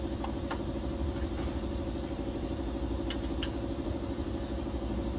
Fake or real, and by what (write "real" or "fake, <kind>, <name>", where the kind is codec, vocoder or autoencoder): real